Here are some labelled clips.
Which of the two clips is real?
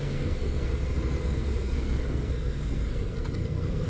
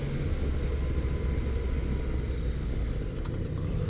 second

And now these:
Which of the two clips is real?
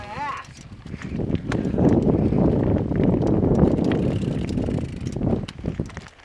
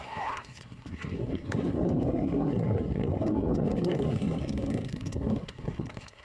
first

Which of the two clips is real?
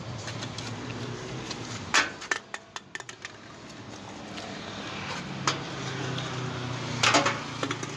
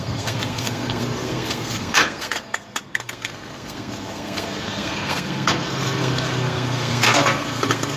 first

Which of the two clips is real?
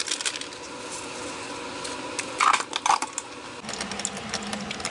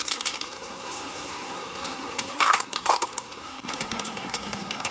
first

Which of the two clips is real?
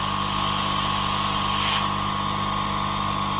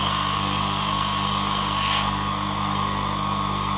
first